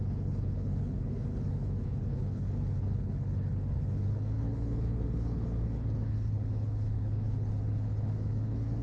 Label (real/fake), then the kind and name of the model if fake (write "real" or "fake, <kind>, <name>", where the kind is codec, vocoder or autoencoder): fake, codec, HILCodec